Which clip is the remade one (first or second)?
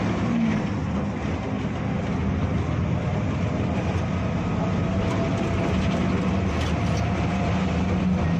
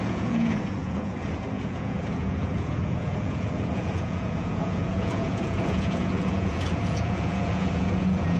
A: second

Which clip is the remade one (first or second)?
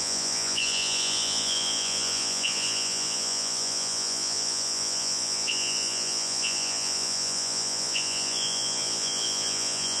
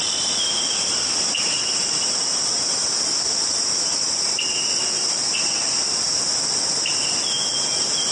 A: first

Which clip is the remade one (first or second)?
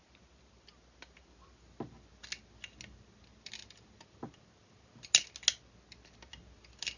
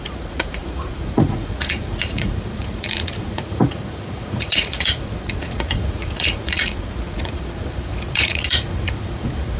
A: second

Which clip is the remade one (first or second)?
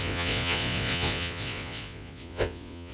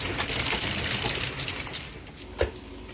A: first